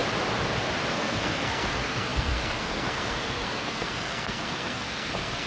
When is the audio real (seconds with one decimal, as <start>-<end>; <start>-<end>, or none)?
0.0-0.9

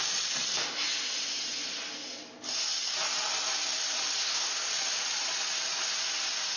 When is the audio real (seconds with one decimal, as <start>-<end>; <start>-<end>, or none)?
0.0-4.2; 4.7-6.6

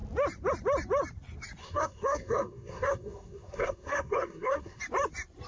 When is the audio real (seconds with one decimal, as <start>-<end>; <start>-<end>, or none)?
0.0-1.6; 4.8-5.5

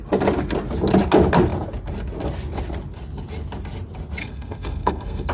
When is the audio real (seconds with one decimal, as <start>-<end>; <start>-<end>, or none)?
0.0-4.2

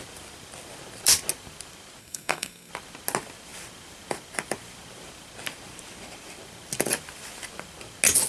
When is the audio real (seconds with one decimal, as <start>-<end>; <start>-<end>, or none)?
0.0-2.0; 2.7-8.3

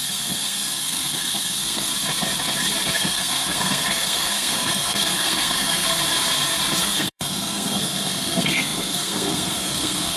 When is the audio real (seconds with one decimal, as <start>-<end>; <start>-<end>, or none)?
1.9-2.9; 6.0-6.8

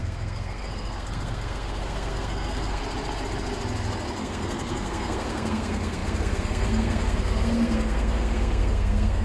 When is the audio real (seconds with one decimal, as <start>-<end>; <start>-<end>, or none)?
2.8-4.2